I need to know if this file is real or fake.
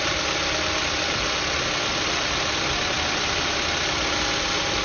real